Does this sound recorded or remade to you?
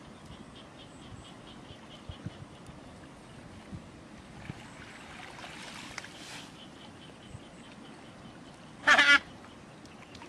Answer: recorded